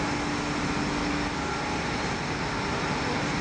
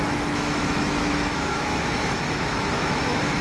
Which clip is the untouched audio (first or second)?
first